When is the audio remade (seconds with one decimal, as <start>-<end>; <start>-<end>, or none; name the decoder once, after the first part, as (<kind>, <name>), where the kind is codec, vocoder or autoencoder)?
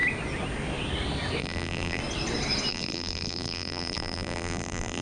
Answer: 1.4-2.0 (vocoder, BigVGAN v2); 2.7-5.0